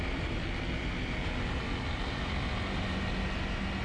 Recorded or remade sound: recorded